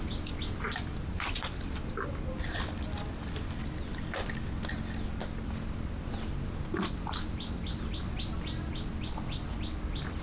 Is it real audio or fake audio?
real